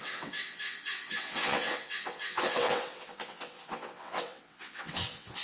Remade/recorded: remade